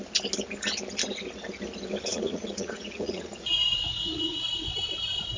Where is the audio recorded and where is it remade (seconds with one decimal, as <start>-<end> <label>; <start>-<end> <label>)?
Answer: 0.0-2.1 recorded; 2.1-4.5 remade; 4.5-5.4 recorded